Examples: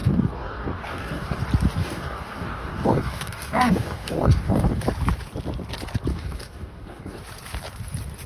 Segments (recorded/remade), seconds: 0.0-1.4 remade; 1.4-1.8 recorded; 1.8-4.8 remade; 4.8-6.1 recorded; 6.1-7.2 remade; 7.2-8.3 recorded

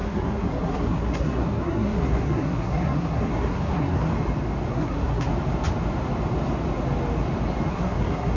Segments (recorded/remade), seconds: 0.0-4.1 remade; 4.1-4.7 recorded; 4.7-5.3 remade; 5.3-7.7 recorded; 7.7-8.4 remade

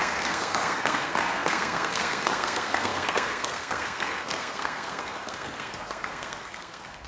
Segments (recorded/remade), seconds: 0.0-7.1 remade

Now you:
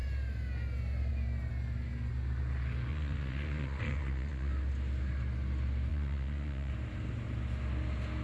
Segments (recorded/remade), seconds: 0.0-2.9 recorded; 2.9-4.5 remade; 4.5-5.9 recorded; 5.9-6.7 remade; 6.7-8.2 recorded

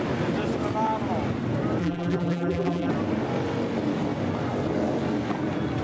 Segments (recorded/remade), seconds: 0.0-1.8 recorded; 1.8-2.9 remade; 2.9-5.8 recorded

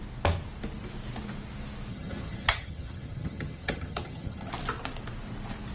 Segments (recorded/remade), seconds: 0.0-1.9 recorded; 1.9-4.5 remade; 4.5-5.7 recorded

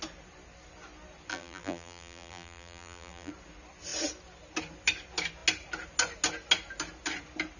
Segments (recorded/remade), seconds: 0.0-1.3 recorded; 1.3-3.3 remade; 3.3-7.6 recorded

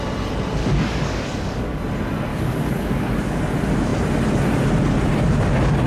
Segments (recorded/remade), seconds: 0.0-0.6 recorded; 0.6-1.8 remade; 1.8-2.3 recorded; 2.3-3.4 remade; 3.4-5.9 recorded